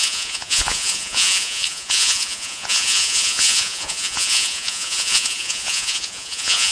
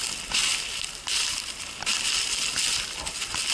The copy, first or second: first